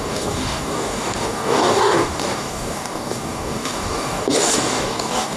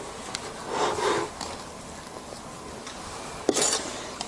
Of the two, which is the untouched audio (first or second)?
second